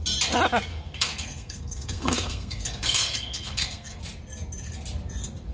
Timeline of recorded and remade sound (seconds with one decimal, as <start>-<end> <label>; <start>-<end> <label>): 0.0-0.7 recorded; 0.7-4.0 remade; 4.0-5.5 recorded